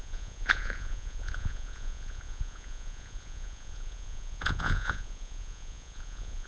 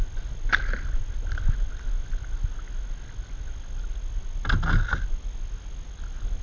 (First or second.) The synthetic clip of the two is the first